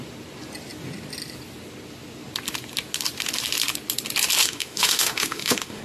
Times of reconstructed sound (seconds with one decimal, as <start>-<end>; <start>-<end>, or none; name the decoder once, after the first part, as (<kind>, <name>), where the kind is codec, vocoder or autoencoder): 4.4-5.8 (autoencoder, DAC-VAE)